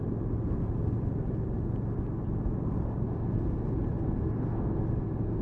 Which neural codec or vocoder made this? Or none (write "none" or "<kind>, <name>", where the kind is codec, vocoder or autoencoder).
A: none